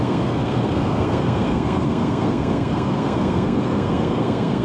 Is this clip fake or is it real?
fake